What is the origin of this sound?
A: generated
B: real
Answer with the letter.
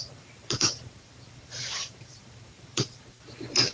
A